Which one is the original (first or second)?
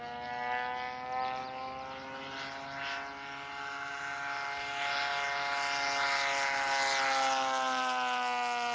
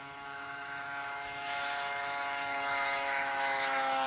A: first